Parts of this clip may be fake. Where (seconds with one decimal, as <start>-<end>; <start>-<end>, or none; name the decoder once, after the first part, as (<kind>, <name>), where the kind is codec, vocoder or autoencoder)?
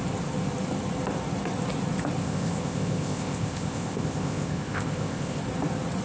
2.2-5.4 (codec, ZipCodec)